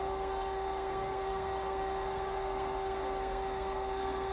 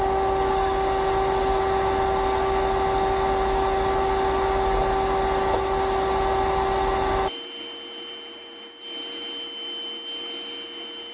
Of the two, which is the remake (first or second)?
first